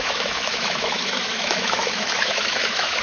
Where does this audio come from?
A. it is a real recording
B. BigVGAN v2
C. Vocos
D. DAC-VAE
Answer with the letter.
D